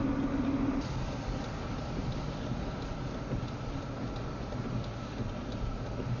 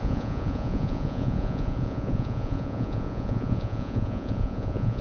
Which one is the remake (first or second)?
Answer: second